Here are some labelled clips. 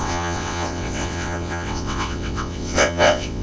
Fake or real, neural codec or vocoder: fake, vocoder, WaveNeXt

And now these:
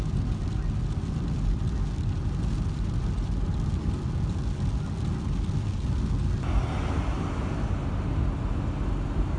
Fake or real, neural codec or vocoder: real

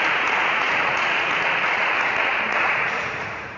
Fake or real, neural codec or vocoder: fake, vocoder, Vocos